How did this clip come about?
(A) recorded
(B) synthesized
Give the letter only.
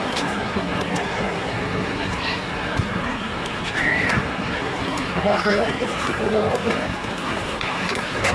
B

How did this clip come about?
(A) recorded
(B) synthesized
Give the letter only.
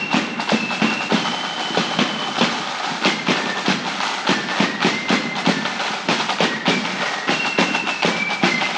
A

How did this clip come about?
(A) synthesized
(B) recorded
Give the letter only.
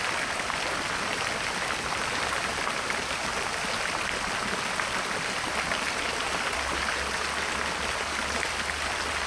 B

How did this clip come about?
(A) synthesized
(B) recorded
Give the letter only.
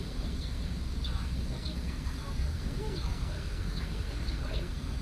A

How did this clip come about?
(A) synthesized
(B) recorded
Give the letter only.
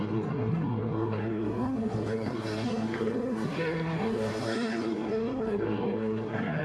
A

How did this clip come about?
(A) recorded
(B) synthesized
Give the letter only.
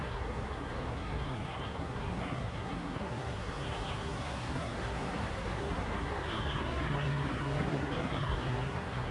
B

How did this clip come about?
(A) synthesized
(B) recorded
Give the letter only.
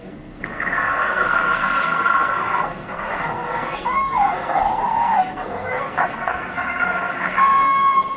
A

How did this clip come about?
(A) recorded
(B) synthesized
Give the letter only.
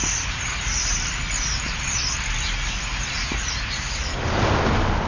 A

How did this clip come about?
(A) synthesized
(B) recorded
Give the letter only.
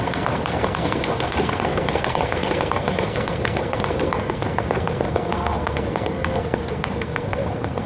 A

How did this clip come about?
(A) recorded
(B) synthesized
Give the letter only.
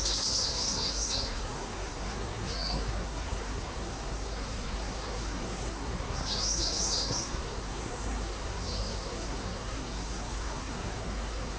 B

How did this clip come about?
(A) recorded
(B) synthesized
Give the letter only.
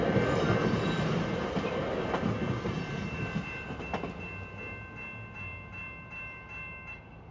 A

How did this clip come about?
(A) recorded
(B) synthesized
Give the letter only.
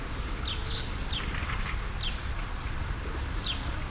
A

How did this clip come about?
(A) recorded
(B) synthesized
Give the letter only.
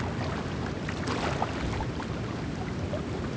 A